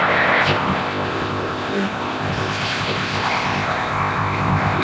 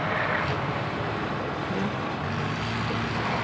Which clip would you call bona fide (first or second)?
second